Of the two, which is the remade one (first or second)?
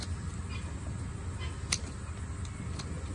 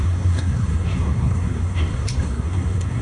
second